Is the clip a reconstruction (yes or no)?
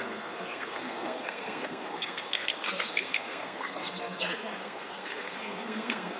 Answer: yes